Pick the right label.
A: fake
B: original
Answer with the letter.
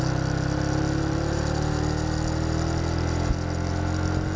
B